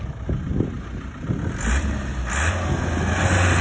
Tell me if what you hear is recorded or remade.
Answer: recorded